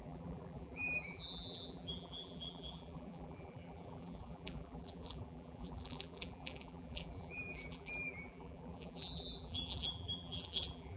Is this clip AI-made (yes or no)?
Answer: yes